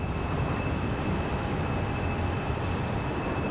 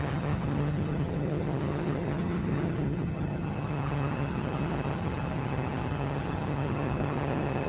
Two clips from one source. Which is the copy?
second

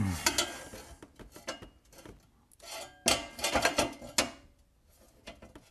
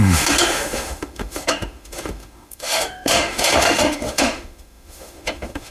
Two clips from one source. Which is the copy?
second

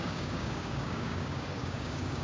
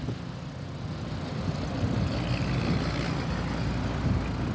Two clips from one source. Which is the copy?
first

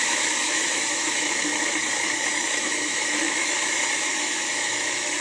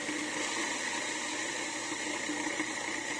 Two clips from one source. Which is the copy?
first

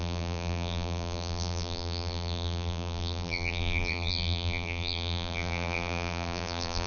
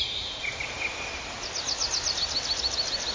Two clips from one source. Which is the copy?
first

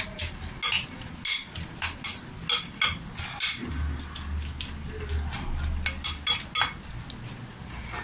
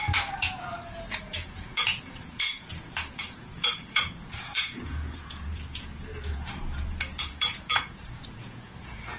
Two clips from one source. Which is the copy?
second